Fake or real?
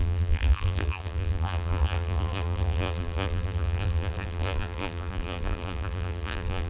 fake